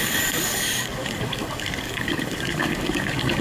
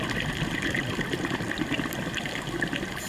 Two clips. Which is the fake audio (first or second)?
first